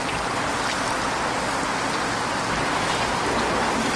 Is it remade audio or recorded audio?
recorded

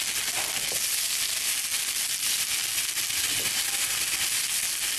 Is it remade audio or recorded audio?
recorded